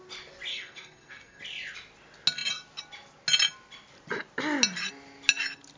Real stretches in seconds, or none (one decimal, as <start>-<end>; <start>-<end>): 0.0-0.5; 1.4-5.8